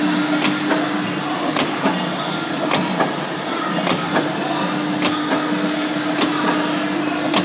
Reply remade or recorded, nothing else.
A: recorded